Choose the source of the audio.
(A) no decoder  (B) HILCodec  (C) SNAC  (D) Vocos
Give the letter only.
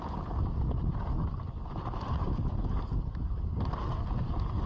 A